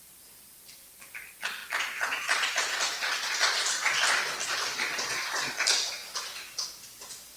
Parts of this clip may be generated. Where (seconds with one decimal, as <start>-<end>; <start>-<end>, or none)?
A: none